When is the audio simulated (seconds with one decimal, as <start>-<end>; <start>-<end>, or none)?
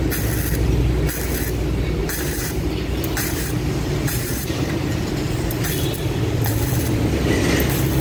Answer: 2.0-5.7